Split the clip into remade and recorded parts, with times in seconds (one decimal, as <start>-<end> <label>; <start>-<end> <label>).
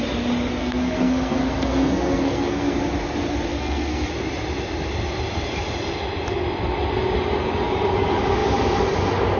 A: 0.0-0.6 recorded; 0.6-2.8 remade; 2.8-3.5 recorded; 3.5-4.1 remade; 4.1-9.4 recorded